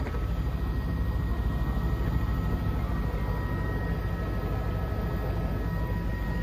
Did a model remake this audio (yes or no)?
no